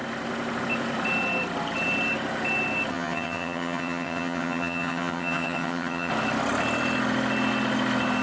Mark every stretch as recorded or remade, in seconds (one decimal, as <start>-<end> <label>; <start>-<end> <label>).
0.0-2.9 recorded; 2.9-6.1 remade; 6.1-8.2 recorded